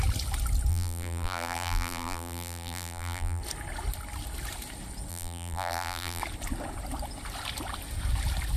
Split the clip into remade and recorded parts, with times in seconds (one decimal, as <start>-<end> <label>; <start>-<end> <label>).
0.0-0.7 recorded; 0.7-3.4 remade; 3.4-5.1 recorded; 5.1-6.2 remade; 6.2-8.6 recorded